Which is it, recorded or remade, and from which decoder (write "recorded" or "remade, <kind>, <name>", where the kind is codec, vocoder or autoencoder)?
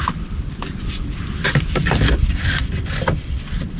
remade, vocoder, BigVGAN v2